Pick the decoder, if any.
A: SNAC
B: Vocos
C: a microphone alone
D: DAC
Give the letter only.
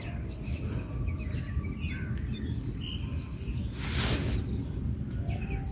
C